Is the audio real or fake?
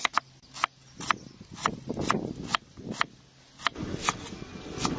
real